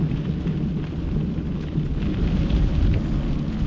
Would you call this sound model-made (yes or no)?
no